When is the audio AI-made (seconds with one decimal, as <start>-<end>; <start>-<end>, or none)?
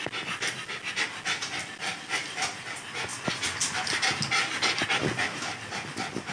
none